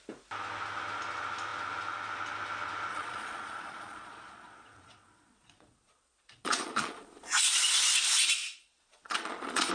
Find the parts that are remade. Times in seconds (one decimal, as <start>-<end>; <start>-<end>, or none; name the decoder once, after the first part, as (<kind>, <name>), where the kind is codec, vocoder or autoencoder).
2.9-7.8 (vocoder, Vocos); 8.6-9.7